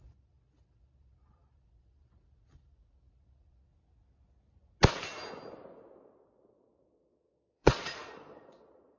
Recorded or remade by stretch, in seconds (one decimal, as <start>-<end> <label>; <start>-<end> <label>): 0.0-3.7 remade; 3.7-7.0 recorded; 7.0-9.0 remade